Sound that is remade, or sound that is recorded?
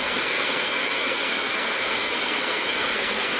remade